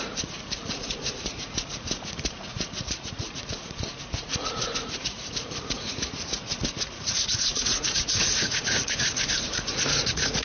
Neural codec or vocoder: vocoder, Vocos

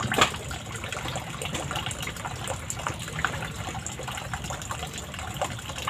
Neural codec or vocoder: none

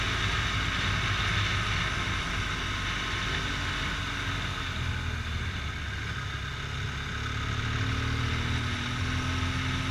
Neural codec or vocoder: none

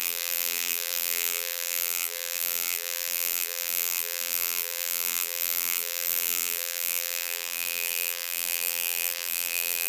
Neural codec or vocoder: vocoder, BigVGAN v2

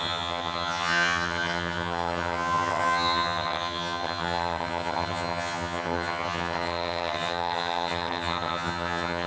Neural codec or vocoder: vocoder, HiFi-GAN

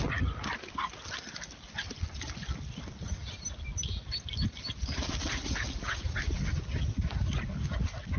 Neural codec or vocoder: none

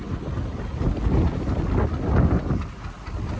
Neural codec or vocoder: none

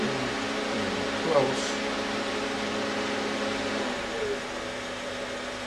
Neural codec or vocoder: none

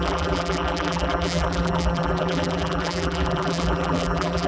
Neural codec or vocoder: vocoder, BigVGAN v2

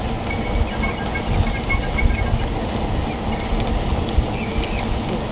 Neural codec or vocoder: none